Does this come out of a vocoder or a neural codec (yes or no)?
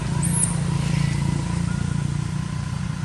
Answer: no